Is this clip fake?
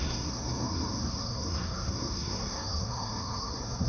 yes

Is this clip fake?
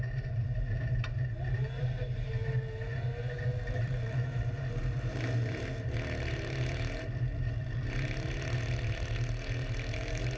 yes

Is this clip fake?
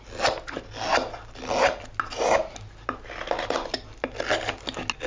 no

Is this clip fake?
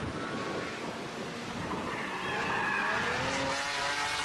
no